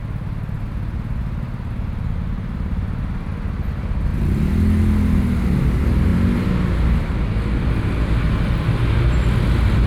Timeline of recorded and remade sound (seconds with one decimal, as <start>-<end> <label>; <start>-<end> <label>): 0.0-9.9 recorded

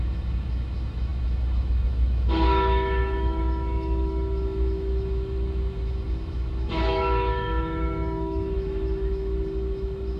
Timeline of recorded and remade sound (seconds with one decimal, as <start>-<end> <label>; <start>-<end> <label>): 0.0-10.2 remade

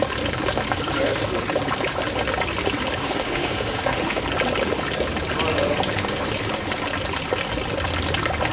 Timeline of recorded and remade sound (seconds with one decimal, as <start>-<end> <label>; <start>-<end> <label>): 0.0-3.0 recorded; 3.0-4.2 remade; 4.2-8.5 recorded